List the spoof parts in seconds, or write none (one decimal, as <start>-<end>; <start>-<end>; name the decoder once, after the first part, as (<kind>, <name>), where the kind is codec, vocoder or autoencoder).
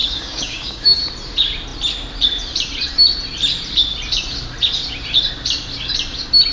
0.0-1.0 (codec, DAC)